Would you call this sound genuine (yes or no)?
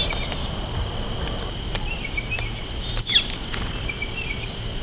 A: yes